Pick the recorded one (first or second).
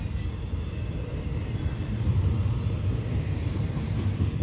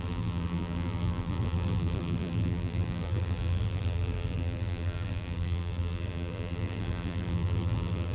first